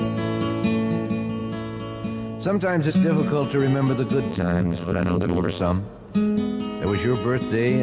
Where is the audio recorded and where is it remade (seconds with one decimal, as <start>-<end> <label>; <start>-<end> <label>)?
0.0-4.3 recorded; 4.3-5.6 remade; 5.6-7.8 recorded